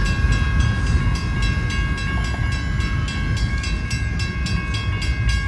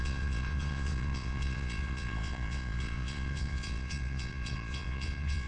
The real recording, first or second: first